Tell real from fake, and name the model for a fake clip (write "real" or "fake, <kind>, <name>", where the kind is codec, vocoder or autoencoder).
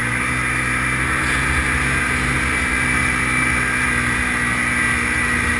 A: real